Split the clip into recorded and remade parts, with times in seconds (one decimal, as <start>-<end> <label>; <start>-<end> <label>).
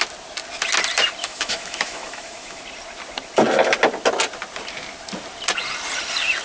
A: 0.0-1.2 recorded; 1.2-2.6 remade; 2.6-6.4 recorded